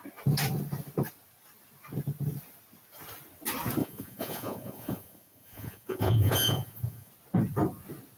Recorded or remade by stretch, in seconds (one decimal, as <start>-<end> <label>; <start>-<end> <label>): 0.0-3.8 recorded; 3.8-7.1 remade; 7.1-8.2 recorded